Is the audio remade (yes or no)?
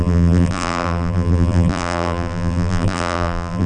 yes